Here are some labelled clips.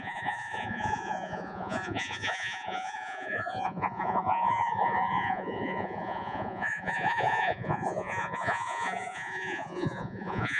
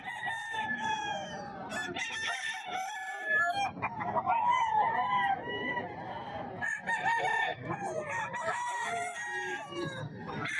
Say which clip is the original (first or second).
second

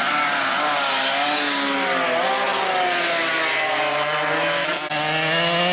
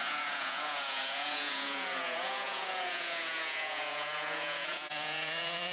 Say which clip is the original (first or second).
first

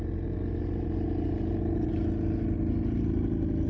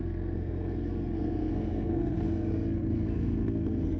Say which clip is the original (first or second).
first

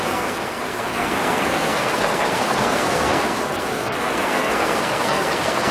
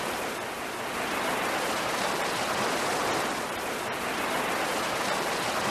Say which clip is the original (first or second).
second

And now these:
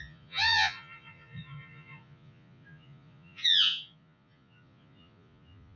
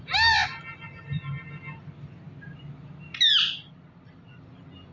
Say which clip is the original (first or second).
second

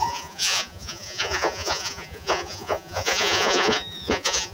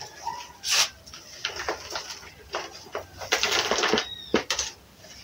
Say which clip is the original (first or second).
second